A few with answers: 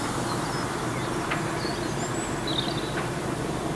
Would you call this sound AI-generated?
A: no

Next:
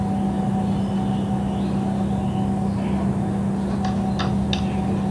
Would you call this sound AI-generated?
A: no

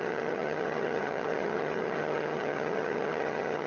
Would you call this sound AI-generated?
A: yes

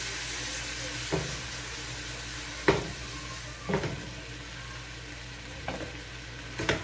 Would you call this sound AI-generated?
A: no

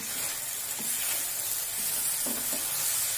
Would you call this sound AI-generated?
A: no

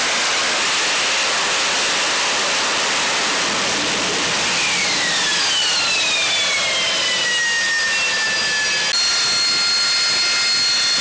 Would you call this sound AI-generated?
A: no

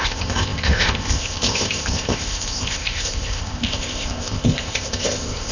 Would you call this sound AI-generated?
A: yes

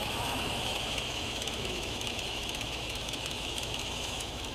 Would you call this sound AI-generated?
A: yes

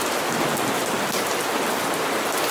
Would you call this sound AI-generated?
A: no